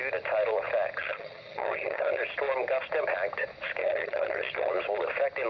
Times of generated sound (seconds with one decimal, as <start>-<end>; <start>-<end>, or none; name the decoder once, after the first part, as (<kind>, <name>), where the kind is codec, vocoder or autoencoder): 1.0-2.2 (vocoder, HiFi-GAN); 3.8-4.7